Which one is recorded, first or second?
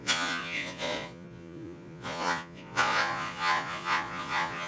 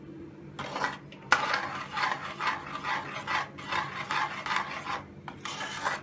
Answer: second